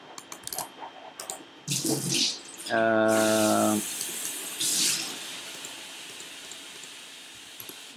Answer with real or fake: real